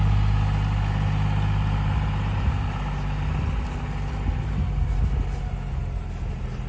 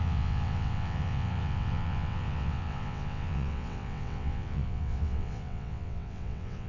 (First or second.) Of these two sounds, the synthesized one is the second